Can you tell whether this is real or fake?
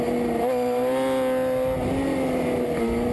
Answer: real